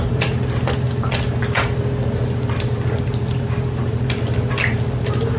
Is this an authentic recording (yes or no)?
yes